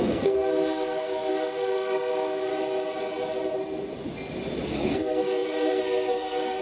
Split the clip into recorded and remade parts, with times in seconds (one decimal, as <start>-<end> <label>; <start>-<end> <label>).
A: 0.0-2.5 remade; 2.5-4.7 recorded; 4.7-6.6 remade